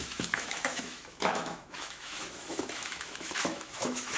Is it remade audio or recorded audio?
remade